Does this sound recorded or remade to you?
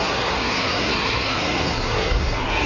remade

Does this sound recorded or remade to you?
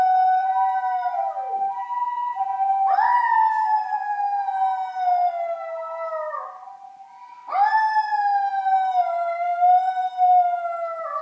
recorded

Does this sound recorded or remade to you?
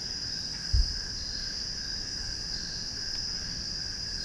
recorded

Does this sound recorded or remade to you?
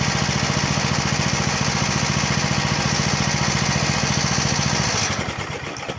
recorded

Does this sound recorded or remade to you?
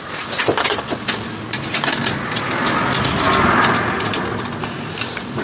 recorded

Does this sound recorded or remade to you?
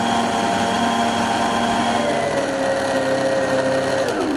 recorded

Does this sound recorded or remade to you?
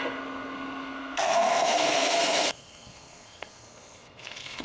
remade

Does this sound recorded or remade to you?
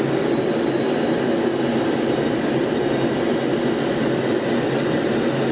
recorded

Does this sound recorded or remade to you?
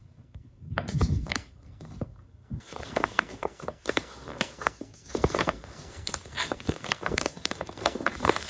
remade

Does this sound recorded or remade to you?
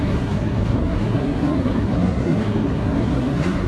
remade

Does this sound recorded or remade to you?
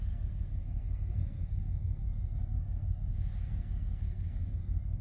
remade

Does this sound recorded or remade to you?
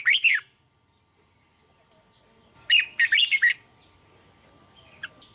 recorded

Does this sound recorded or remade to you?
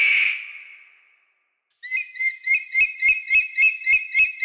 recorded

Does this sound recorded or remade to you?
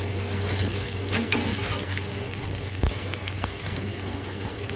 remade